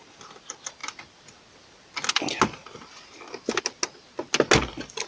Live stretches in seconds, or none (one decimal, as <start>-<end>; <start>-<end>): 0.0-5.1